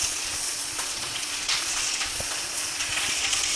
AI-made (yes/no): yes